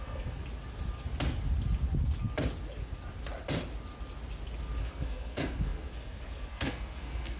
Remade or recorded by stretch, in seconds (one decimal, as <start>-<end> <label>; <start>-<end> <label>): 0.0-0.4 remade; 0.4-4.8 recorded; 4.8-7.4 remade